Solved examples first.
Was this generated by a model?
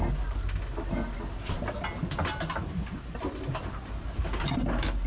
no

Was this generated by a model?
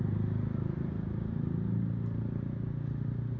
no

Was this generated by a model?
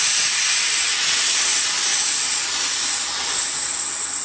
no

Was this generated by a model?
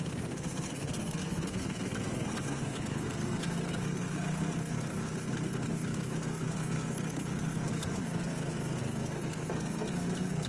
yes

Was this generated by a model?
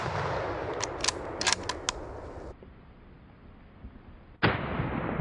no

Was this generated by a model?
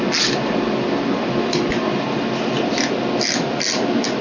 no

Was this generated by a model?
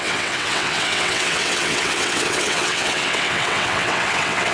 yes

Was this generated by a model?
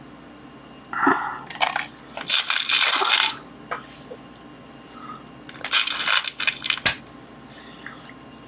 no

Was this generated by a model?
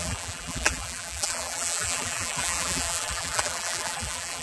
yes